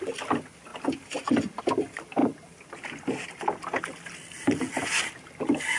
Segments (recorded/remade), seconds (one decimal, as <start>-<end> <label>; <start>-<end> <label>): 0.0-5.8 recorded

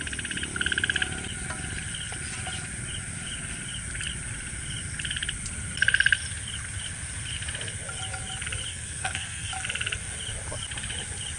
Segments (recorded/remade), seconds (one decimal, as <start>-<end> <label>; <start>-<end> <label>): 0.0-8.7 recorded; 8.7-9.5 remade; 9.5-11.4 recorded

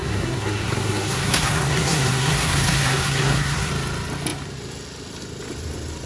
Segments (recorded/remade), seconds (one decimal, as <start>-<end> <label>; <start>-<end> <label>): 0.0-3.7 remade; 3.7-6.1 recorded

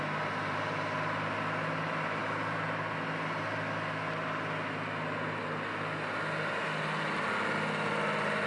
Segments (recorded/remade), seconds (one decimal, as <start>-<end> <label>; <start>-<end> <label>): 0.0-8.5 recorded

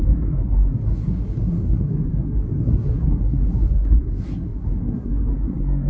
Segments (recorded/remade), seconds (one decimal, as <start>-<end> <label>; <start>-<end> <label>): 0.0-5.9 remade

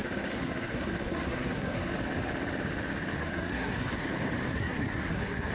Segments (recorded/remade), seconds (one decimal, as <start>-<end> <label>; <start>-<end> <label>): 0.0-1.9 remade; 1.9-3.2 recorded; 3.2-4.1 remade; 4.1-4.5 recorded; 4.5-5.5 remade

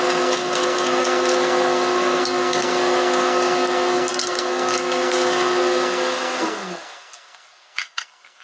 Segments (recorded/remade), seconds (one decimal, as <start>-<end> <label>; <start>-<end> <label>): 0.0-8.4 remade